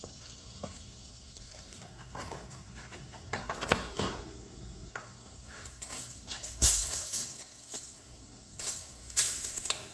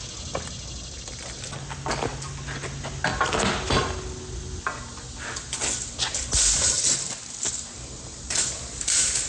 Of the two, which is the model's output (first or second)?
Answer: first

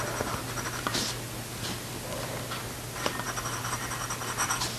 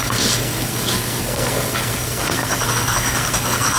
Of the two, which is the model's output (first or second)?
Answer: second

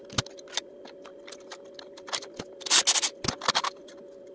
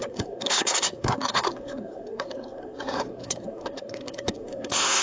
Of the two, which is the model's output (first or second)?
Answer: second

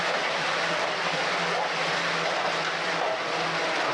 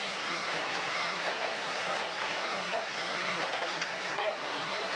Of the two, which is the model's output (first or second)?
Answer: second